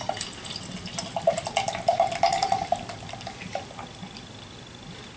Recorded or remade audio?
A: remade